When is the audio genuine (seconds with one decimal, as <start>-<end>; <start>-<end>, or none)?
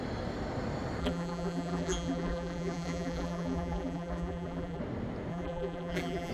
0.0-1.0; 4.8-5.3